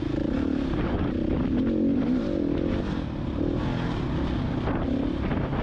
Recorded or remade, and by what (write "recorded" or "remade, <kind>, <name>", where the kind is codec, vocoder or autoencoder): recorded